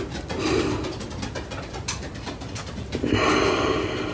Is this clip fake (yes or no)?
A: no